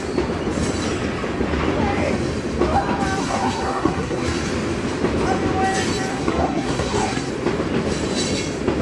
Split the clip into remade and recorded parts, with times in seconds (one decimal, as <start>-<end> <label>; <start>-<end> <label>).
0.0-3.2 recorded; 3.2-4.5 remade; 4.5-6.1 recorded; 6.1-7.3 remade; 7.3-8.8 recorded

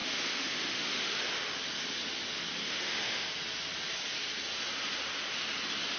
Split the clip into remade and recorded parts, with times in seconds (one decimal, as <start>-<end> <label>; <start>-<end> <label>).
0.0-1.2 remade; 1.2-2.6 recorded; 2.6-3.3 remade; 3.3-6.0 recorded

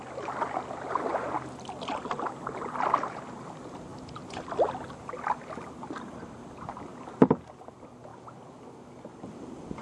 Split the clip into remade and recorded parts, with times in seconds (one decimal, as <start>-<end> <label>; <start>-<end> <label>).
0.0-9.8 recorded